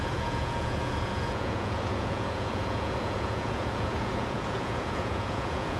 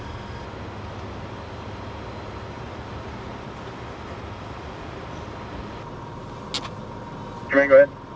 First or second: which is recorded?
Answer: second